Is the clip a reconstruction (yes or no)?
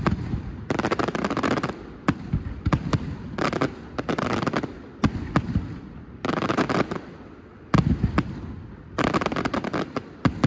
no